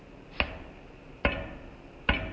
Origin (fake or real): real